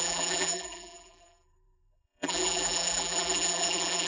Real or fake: fake